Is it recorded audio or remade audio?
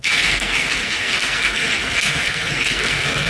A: remade